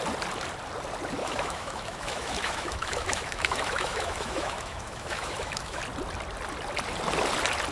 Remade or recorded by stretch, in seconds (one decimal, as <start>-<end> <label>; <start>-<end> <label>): 0.0-1.2 recorded; 1.2-5.8 remade; 5.8-7.7 recorded